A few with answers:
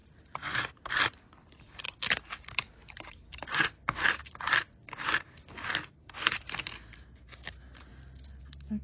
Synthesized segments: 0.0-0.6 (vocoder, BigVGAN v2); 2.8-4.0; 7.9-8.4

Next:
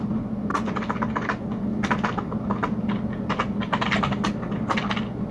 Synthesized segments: none

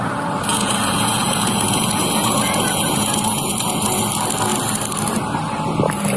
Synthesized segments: 0.5-4.0 (vocoder, Vocos)

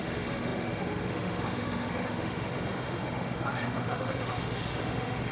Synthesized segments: 0.0-5.3 (autoencoder, DAC-VAE)

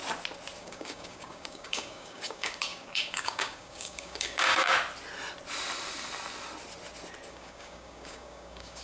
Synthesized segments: 0.6-4.7 (codec, DAC); 7.3-8.8

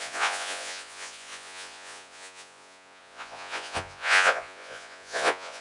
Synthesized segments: 0.0-5.6 (vocoder, Vocos)

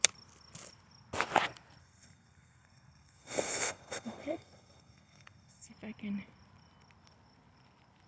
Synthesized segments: 1.8-5.7 (codec, SNAC)